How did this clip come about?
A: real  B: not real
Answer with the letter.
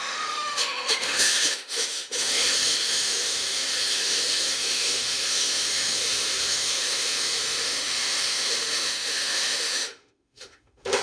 B